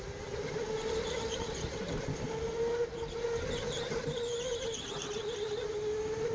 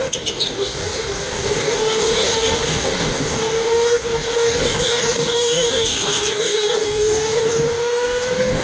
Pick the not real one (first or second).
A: second